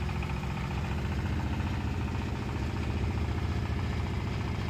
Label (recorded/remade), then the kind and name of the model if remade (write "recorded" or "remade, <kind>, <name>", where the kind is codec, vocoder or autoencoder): recorded